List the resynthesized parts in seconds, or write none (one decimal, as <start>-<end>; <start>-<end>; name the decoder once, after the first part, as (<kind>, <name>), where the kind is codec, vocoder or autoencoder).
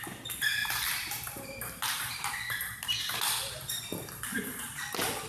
0.6-3.8 (vocoder, BigVGAN v2); 4.3-5.3